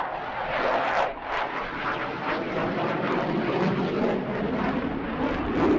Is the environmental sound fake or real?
real